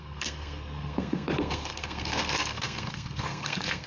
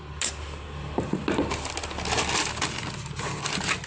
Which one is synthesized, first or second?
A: first